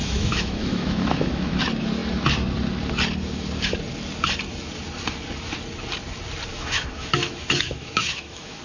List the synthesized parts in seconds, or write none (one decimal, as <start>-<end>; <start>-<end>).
0.0-1.6; 6.5-8.6